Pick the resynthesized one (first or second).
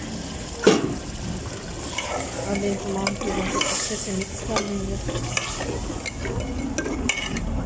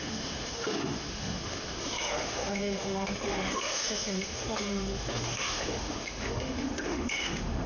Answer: second